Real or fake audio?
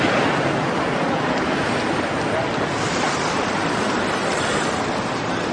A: real